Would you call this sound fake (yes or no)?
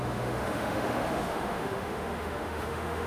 yes